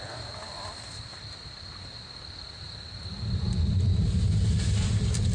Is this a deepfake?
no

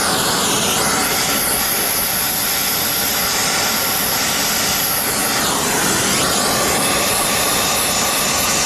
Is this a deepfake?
no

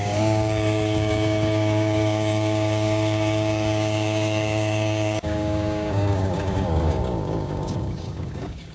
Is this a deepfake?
yes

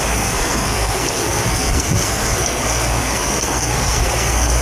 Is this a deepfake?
yes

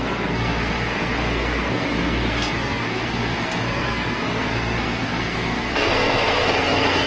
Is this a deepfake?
yes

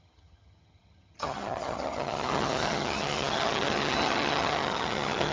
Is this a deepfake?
yes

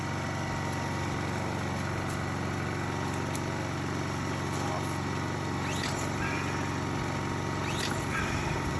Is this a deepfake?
no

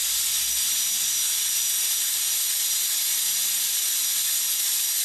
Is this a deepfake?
no